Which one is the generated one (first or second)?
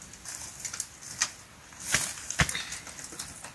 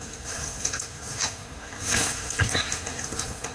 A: second